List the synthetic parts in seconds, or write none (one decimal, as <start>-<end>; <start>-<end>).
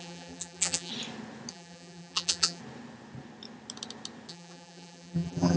0.0-0.9; 1.5-2.6; 4.3-5.6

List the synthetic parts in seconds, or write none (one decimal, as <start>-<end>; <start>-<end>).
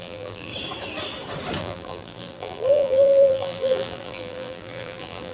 0.0-0.5; 1.6-5.3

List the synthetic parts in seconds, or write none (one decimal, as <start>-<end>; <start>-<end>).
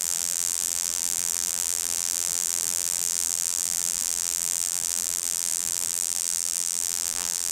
0.0-7.5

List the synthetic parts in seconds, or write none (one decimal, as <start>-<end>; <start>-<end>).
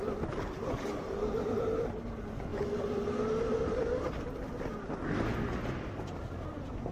none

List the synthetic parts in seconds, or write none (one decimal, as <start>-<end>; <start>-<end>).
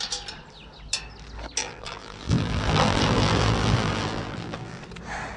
1.6-4.8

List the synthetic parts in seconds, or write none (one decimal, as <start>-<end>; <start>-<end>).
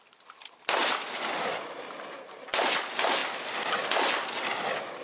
0.8-1.5